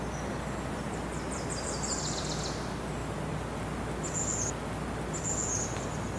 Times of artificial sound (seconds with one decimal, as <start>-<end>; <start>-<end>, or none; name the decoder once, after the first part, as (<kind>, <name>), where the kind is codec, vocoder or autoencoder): none